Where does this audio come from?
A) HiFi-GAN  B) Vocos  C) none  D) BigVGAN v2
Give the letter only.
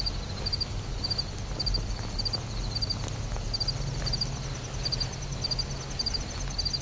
C